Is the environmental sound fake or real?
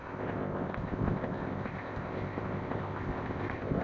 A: fake